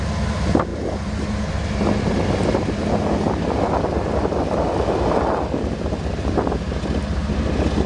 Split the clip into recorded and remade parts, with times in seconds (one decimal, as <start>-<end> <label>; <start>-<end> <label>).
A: 0.0-7.9 recorded